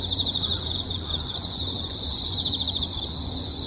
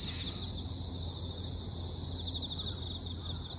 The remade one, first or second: first